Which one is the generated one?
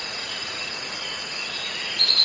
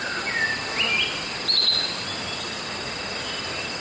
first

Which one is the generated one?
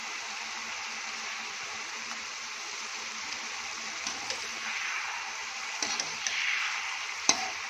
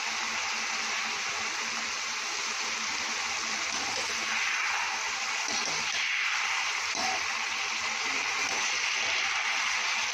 first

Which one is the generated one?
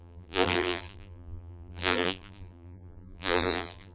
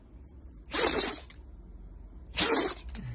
first